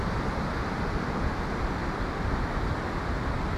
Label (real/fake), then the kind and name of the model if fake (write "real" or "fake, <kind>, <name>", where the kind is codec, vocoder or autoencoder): real